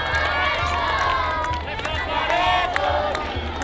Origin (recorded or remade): recorded